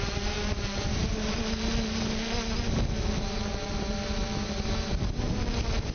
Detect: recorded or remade recorded